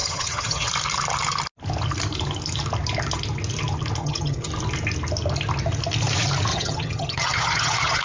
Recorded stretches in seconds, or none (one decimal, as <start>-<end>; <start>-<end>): 0.7-4.0; 4.5-6.5